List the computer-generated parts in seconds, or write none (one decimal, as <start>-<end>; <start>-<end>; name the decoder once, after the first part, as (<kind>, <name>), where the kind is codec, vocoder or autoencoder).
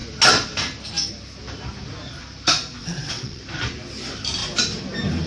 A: 2.8-3.4 (vocoder, WaveNeXt)